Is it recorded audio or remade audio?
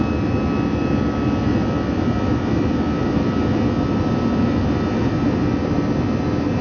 recorded